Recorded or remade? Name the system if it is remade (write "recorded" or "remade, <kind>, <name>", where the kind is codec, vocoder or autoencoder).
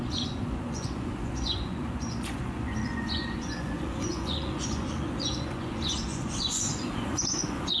remade, vocoder, Vocos